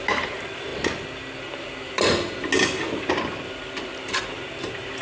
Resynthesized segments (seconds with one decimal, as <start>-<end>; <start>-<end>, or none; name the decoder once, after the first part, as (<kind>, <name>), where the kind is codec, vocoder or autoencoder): none